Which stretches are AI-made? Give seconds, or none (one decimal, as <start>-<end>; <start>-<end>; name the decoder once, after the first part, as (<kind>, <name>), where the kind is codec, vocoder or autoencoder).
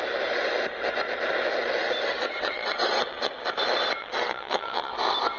2.2-3.3 (vocoder, WaveNeXt); 4.0-4.9